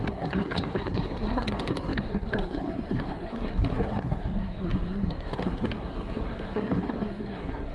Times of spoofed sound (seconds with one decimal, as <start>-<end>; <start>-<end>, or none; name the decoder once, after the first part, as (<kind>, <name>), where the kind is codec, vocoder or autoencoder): 0.0-7.7 (codec, SNAC)